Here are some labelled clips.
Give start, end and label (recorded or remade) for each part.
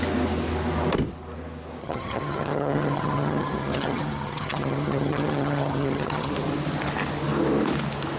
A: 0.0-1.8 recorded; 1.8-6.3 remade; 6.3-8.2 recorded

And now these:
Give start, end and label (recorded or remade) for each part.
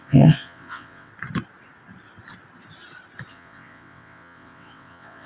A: 0.0-1.1 remade; 1.1-3.3 recorded; 3.3-5.3 remade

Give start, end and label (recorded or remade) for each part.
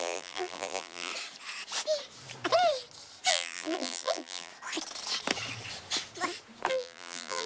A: 0.0-1.1 remade; 1.1-3.3 recorded; 3.3-4.5 remade; 4.5-6.7 recorded; 6.7-7.5 remade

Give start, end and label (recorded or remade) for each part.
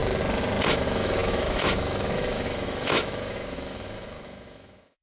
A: 0.0-0.7 recorded; 0.7-5.0 remade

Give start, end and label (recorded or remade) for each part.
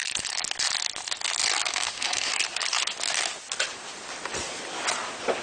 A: 0.0-1.7 recorded; 1.7-2.3 remade; 2.3-5.4 recorded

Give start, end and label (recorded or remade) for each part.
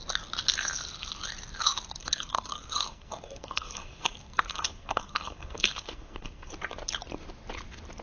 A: 0.0-2.0 recorded; 2.0-6.5 remade; 6.5-8.0 recorded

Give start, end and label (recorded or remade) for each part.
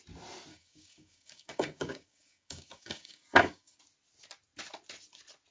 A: 0.0-0.5 recorded; 0.5-3.8 remade; 3.8-5.5 recorded